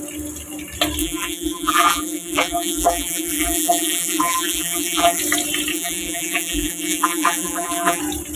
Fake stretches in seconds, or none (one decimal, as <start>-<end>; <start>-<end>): 1.0-5.2; 5.7-8.0